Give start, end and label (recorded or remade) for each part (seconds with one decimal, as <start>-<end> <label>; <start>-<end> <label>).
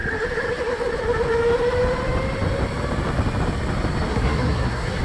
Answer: 0.0-4.1 recorded; 4.1-5.0 remade